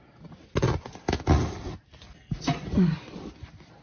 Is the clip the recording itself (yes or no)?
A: yes